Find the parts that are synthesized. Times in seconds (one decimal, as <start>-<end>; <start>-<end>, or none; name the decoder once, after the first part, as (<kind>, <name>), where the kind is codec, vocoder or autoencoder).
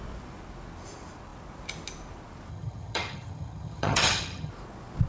2.5-4.5 (vocoder, HiFi-GAN)